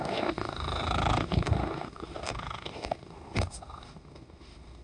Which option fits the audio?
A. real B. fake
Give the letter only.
B